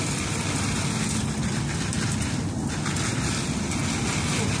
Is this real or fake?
real